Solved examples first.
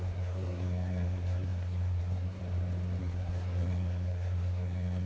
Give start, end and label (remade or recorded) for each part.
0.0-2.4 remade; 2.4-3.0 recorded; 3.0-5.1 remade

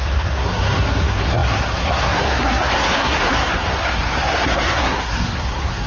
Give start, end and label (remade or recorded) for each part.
0.0-5.9 remade

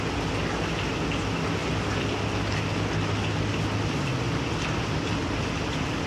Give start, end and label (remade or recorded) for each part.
0.0-6.1 recorded

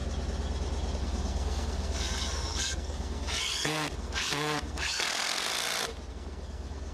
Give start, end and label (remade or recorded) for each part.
0.0-1.0 recorded; 1.0-5.5 remade; 5.5-6.1 recorded; 6.1-6.9 remade

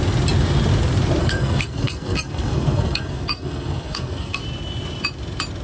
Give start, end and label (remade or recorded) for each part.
0.0-1.2 recorded; 1.2-4.4 remade; 4.4-5.6 recorded

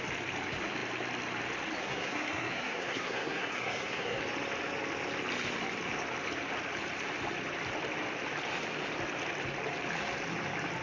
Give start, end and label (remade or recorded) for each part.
0.0-1.8 recorded; 1.8-4.2 remade; 4.2-10.8 recorded